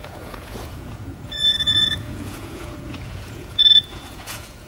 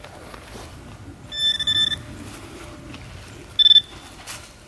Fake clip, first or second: first